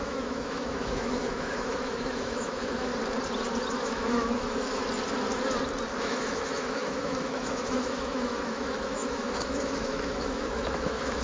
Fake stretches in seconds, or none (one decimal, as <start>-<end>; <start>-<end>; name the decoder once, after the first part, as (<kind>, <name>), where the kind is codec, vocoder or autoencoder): 0.0-2.9 (autoencoder, DAC-VAE); 3.8-4.8; 6.0-11.2